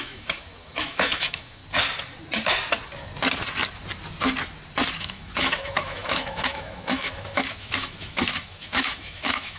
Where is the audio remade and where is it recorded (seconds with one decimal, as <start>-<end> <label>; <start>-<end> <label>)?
0.0-1.6 remade; 1.6-5.0 recorded; 5.0-9.6 remade